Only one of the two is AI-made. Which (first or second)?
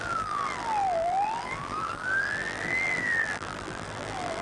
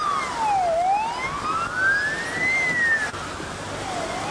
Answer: first